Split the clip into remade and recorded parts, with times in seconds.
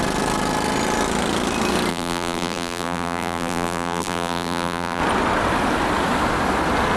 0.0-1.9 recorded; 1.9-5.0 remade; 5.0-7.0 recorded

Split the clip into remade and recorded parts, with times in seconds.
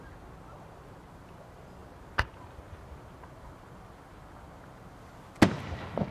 0.0-6.1 recorded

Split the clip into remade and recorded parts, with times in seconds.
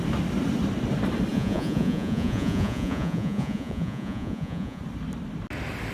0.0-1.3 recorded; 1.3-4.8 remade; 4.8-5.9 recorded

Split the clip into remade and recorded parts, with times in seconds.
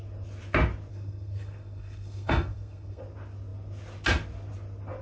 0.0-0.9 recorded; 0.9-3.0 remade; 3.0-5.0 recorded